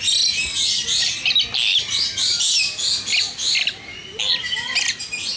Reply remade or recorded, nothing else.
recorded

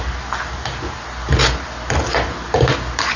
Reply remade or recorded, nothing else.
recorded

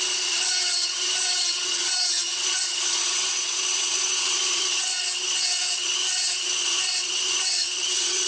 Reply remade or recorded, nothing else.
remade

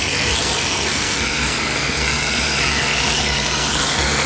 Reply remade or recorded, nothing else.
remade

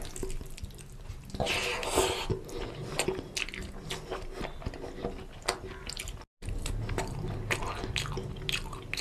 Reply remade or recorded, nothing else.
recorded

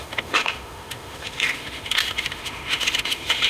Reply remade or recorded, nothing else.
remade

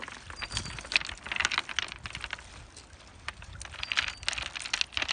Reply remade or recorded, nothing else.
recorded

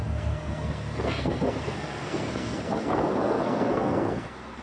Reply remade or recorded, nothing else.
remade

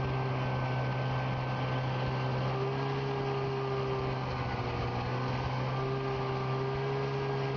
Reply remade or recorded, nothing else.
recorded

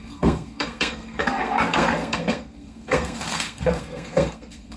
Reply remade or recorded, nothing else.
remade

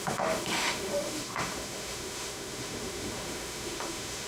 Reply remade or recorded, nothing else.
remade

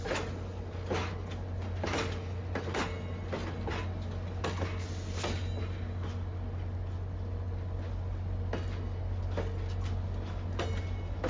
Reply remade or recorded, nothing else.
recorded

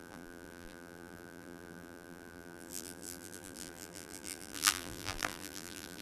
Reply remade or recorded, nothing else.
remade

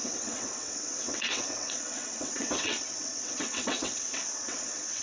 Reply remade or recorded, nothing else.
remade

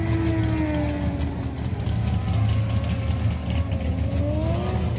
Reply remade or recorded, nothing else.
recorded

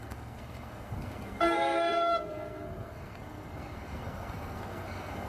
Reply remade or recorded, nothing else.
remade